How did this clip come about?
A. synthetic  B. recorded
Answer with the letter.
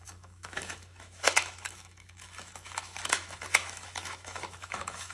A